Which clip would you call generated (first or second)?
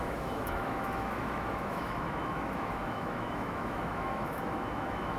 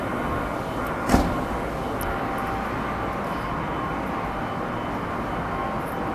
first